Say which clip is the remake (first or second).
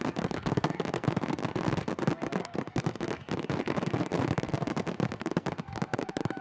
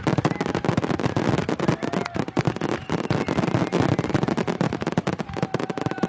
first